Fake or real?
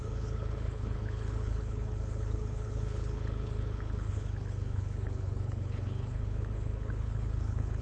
fake